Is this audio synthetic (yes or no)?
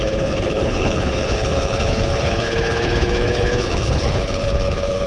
yes